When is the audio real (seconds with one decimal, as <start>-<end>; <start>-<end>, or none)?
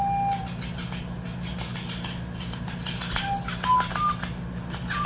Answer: 0.0-5.1